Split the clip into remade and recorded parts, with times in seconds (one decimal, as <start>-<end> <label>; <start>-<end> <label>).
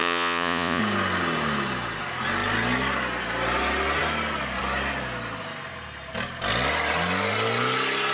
0.0-0.8 remade; 0.8-8.1 recorded